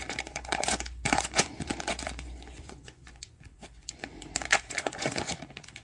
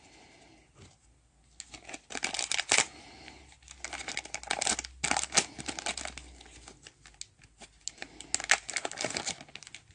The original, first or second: second